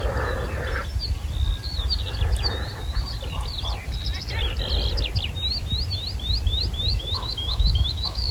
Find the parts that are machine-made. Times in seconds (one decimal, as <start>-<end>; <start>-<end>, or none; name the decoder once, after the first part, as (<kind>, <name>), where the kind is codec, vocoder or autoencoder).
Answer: 6.9-8.3 (autoencoder, DAC-VAE)